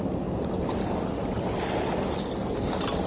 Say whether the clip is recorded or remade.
recorded